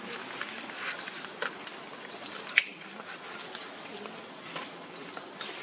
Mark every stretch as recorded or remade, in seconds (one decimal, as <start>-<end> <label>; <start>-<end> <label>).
0.0-5.6 recorded